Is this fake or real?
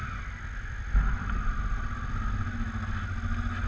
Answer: real